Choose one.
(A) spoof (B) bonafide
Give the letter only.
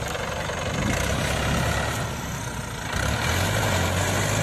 B